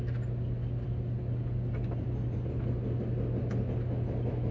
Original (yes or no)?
yes